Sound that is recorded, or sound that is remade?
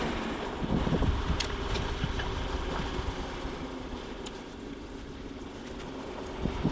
recorded